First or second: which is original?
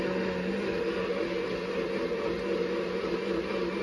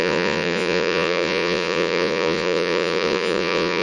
first